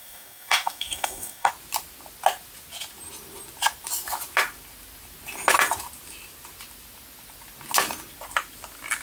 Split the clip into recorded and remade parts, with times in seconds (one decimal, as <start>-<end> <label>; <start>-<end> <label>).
0.0-1.5 remade; 1.5-9.0 recorded